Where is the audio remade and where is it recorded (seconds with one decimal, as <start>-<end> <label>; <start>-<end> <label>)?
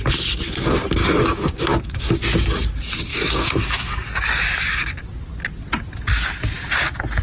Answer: 0.0-1.0 recorded; 1.0-2.1 remade; 2.1-3.1 recorded; 3.1-5.0 remade; 5.0-7.2 recorded